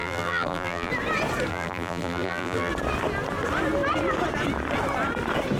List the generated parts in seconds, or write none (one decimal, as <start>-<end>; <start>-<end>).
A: 0.0-0.9; 1.5-2.7